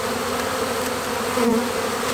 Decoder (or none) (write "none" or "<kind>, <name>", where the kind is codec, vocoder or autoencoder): none